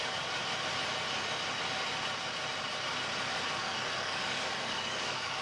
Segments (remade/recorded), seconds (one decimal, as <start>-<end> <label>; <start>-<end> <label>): 0.0-0.4 remade; 0.4-3.6 recorded; 3.6-5.4 remade